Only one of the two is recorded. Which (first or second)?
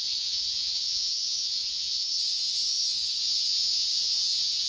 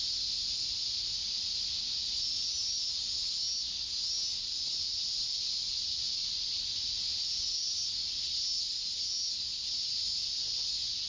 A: second